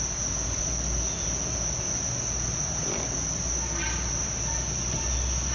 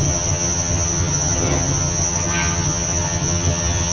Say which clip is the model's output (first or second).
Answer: second